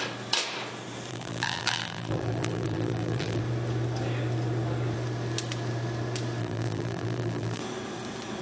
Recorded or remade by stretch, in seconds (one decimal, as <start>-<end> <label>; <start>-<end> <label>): 0.0-1.1 recorded; 1.1-3.4 remade; 3.4-6.4 recorded; 6.4-7.6 remade; 7.6-8.4 recorded